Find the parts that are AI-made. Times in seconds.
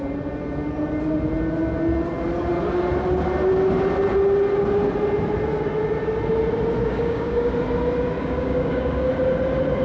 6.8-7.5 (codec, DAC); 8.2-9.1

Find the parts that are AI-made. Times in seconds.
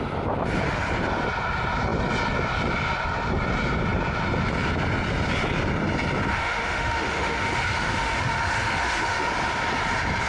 6.4-9.3 (autoencoder, DAC-VAE)